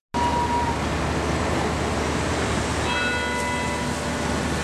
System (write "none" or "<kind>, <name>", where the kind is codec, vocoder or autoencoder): none